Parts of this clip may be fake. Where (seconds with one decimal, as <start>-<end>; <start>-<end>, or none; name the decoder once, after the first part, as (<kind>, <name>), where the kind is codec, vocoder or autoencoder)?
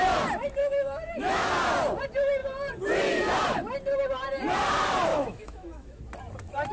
0.6-1.5 (autoencoder, DAC-VAE); 5.1-6.0